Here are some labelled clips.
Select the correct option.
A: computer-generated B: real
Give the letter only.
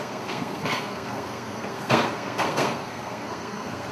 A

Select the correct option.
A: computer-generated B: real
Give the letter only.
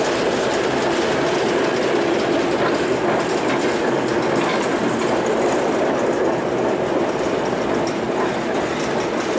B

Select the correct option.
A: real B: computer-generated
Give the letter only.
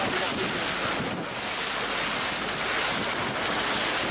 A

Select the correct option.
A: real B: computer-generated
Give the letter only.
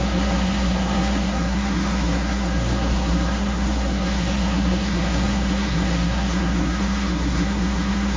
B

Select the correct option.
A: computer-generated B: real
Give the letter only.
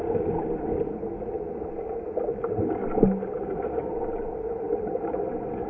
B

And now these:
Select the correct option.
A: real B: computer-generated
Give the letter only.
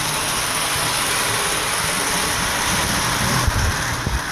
A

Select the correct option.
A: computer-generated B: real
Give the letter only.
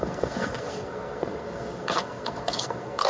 A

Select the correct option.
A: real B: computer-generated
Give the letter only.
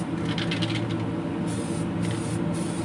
A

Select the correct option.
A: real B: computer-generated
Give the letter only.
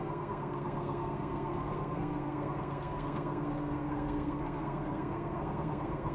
B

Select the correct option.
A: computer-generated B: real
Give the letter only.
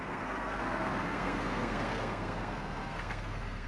A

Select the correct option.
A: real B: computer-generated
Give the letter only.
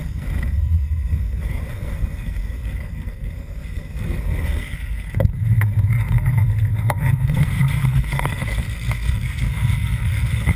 B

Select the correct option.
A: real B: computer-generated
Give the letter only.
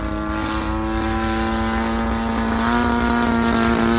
A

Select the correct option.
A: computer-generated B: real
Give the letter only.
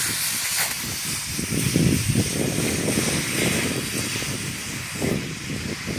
B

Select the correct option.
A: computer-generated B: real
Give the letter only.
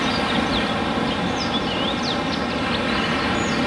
B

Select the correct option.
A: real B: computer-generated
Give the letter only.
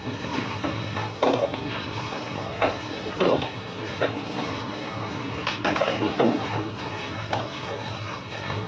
B